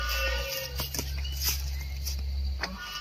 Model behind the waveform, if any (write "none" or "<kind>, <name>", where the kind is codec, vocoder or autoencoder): none